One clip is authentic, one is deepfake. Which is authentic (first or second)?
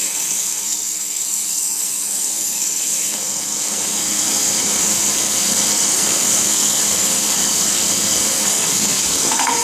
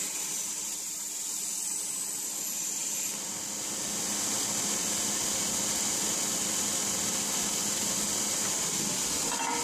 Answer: second